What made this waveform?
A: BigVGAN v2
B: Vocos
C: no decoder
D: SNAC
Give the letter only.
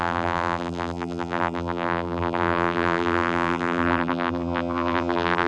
A